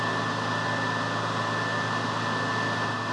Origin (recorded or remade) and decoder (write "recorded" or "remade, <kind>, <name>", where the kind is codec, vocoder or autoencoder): recorded